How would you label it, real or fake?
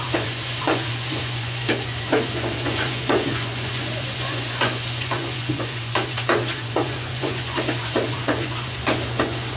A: fake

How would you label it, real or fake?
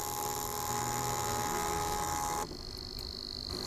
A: real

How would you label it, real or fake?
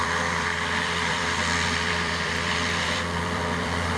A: fake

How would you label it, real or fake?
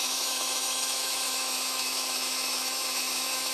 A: fake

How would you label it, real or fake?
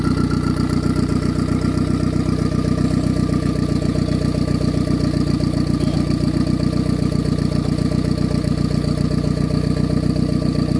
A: real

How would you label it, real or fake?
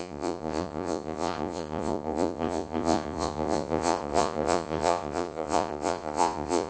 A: fake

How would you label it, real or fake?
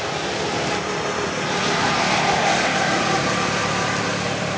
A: real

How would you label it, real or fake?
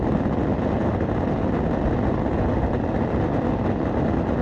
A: real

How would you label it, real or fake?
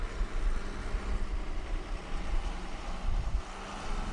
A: real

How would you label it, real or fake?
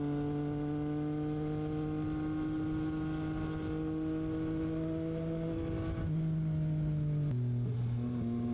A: real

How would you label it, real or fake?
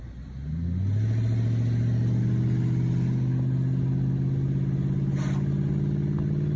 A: real